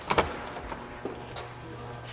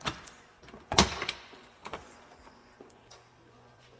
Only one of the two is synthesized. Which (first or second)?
second